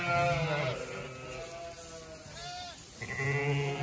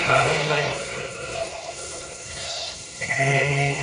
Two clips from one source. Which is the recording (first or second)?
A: first